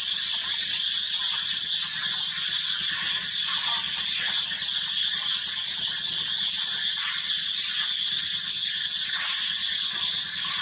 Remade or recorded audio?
recorded